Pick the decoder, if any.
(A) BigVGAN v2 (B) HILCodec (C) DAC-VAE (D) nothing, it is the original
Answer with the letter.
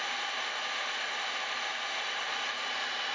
D